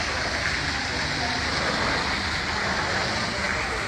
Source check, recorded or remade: recorded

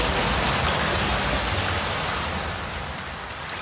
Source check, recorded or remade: recorded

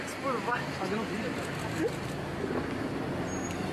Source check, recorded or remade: recorded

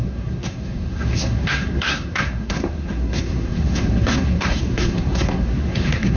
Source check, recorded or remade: remade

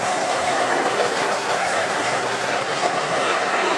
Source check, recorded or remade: remade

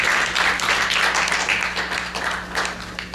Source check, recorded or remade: recorded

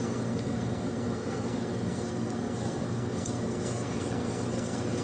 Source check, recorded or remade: remade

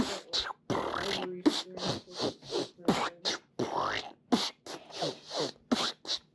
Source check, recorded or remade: recorded